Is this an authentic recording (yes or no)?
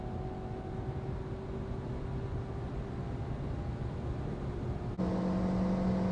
yes